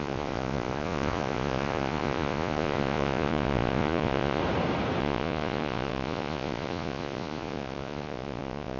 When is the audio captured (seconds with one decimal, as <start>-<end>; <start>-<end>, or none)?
4.4-5.0